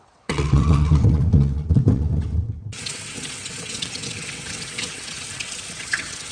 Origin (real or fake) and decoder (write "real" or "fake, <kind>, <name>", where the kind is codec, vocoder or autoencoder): fake, vocoder, WaveNeXt